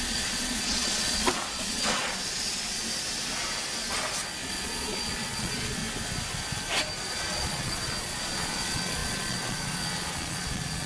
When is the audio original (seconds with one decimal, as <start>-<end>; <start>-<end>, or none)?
2.8-4.5; 5.8-7.1